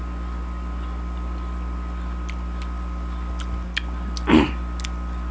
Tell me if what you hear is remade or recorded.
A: recorded